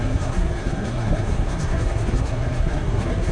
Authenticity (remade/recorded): remade